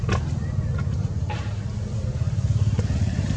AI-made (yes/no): no